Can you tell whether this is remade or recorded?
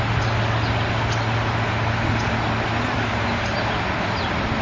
recorded